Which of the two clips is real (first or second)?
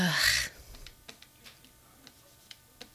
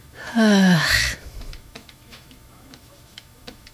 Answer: first